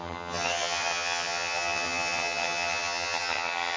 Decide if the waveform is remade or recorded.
remade